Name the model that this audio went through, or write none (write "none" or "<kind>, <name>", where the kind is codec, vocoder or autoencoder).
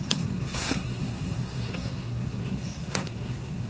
codec, SNAC